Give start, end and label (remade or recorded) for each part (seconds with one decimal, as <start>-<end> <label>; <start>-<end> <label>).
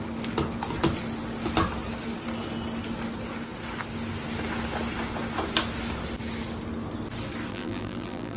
0.0-7.5 recorded; 7.5-8.4 remade